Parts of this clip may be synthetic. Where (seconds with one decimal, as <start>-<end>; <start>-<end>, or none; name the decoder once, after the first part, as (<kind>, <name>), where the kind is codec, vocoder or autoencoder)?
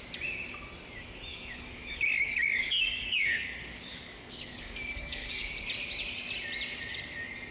1.3-5.5 (codec, DAC)